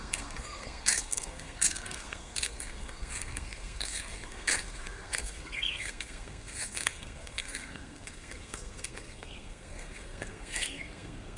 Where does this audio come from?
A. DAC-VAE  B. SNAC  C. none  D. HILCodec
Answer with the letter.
B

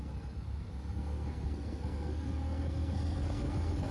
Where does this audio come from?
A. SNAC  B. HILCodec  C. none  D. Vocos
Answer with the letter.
A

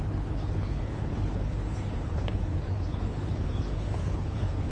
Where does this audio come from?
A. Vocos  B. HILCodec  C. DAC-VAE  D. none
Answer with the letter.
B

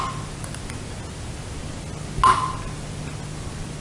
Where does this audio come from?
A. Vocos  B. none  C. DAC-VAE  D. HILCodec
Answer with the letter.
B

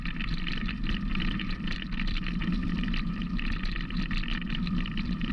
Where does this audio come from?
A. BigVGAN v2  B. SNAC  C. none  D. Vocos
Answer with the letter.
A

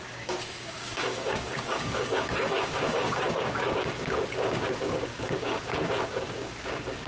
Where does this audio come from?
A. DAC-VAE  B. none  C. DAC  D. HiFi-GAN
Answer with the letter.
C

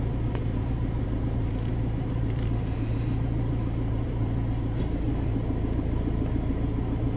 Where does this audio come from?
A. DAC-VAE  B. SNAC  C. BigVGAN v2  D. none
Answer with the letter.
C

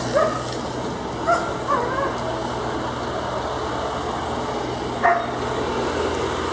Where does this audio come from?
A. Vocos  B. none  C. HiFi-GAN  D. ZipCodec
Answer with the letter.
B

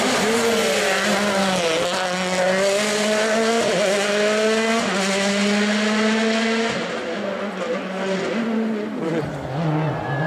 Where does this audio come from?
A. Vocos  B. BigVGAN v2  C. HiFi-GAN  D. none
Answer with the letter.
D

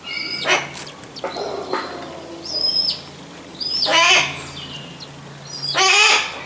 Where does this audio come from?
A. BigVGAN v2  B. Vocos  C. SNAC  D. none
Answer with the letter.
D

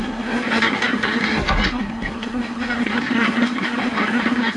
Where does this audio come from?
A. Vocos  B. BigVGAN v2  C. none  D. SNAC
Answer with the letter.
D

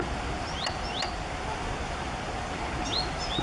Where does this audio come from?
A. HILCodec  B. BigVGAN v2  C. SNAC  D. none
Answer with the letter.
D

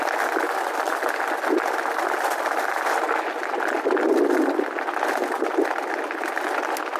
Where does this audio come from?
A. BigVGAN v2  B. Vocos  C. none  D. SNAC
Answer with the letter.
C